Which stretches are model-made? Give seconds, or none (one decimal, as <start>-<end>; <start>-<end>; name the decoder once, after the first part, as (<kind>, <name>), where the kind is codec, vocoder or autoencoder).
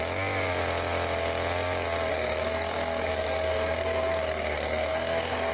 2.1-5.5 (codec, SNAC)